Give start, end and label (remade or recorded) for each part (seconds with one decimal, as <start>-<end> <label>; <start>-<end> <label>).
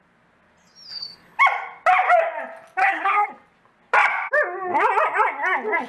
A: 0.0-0.9 recorded; 0.9-1.4 remade; 1.4-2.8 recorded; 2.8-3.3 remade; 3.3-5.9 recorded